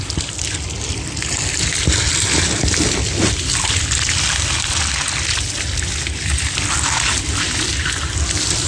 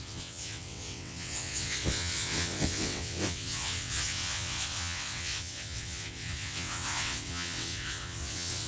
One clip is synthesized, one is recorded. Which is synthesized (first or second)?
second